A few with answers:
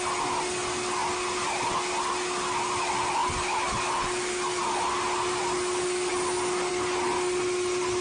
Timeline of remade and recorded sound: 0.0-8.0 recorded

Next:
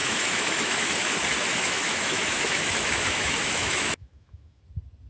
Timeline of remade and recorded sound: 0.0-1.1 remade; 1.1-1.5 recorded; 1.5-4.6 remade; 4.6-5.1 recorded